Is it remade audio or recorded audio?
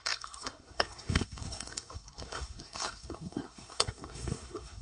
remade